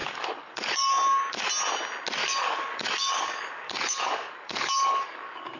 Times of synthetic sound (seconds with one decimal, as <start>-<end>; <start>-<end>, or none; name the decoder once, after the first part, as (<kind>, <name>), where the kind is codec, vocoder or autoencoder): 0.0-1.5 (codec, DAC); 2.2-5.6